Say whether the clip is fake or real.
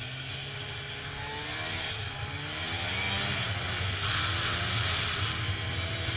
real